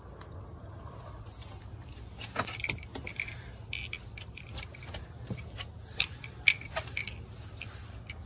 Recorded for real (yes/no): yes